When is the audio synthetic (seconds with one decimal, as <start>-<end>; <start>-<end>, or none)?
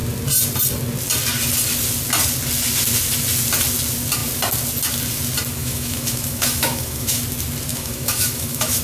5.6-7.2; 7.7-8.8